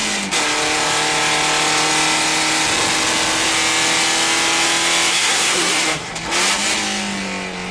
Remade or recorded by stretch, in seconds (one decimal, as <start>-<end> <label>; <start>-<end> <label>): 0.0-5.1 recorded; 5.1-6.1 remade; 6.1-7.7 recorded